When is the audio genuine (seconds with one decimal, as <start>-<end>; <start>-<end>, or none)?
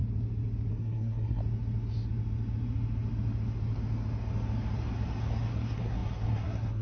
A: 0.0-0.7; 1.4-5.5